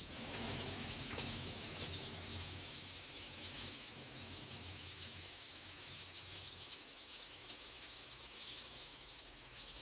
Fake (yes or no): yes